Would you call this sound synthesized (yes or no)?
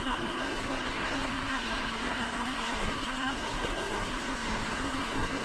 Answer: yes